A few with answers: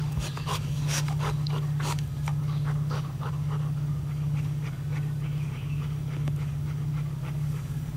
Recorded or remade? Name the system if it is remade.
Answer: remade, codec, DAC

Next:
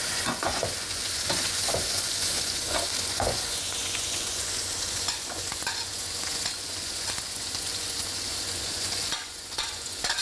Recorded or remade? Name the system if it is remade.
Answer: remade, vocoder, Vocos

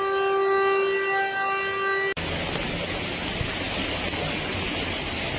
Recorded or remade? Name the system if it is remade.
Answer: recorded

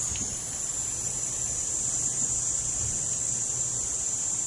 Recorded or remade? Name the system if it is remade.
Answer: recorded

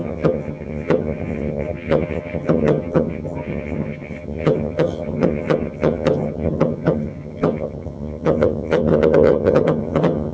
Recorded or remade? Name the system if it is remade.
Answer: remade, vocoder, HiFi-GAN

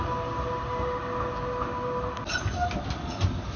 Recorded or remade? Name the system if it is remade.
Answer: recorded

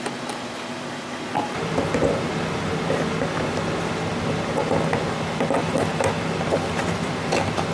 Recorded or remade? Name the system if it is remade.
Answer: recorded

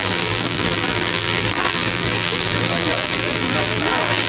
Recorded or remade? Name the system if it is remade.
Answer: remade, vocoder, BigVGAN v2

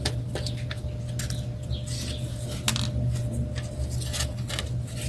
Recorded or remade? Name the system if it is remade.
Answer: recorded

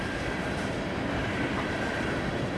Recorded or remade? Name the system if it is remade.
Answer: remade, vocoder, BigVGAN v2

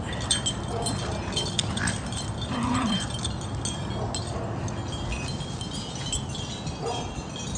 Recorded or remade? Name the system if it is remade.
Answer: recorded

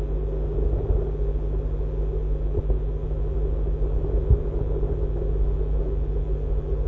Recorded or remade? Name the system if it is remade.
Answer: recorded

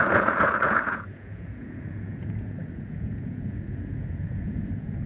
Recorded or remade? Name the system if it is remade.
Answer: remade, vocoder, Vocos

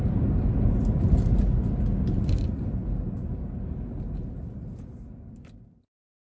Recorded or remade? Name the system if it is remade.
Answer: recorded